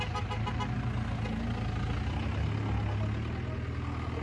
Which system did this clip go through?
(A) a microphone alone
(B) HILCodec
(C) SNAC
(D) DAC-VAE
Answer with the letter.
A